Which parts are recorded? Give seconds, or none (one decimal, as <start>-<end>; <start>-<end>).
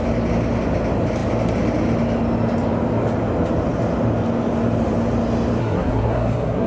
0.0-5.6